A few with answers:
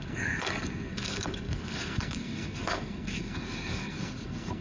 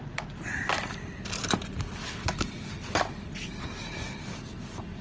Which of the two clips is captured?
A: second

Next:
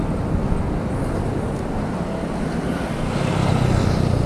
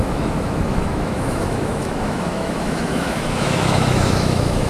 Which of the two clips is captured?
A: first